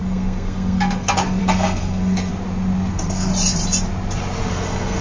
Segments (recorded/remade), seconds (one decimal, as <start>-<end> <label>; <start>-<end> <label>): 0.0-2.3 remade; 2.3-2.9 recorded; 2.9-3.3 remade; 3.3-4.5 recorded; 4.5-5.0 remade

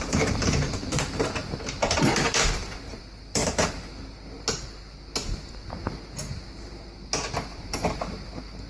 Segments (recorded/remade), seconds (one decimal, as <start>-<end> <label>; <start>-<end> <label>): 0.0-1.4 remade; 1.4-3.0 recorded; 3.0-3.4 remade; 3.4-7.5 recorded; 7.5-8.7 remade

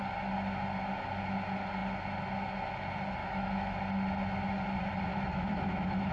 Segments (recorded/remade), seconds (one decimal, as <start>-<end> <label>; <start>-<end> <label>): 0.0-3.2 recorded; 3.2-3.8 remade; 3.8-5.1 recorded; 5.1-6.1 remade

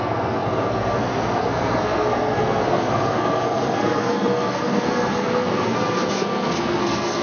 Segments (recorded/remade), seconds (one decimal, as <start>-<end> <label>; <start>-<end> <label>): 0.0-7.2 remade

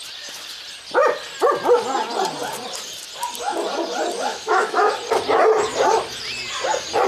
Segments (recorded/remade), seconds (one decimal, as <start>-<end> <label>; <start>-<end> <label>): 0.0-4.3 recorded; 4.3-4.9 remade; 4.9-7.1 recorded

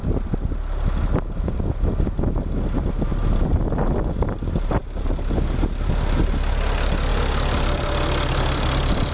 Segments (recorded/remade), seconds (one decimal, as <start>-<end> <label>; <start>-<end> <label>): 0.0-9.1 recorded

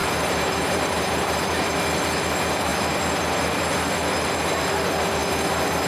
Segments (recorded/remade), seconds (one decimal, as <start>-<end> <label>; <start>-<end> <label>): 0.0-1.7 remade; 1.7-5.9 recorded